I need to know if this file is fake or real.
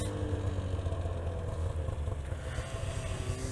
real